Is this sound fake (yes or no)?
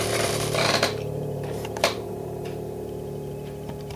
yes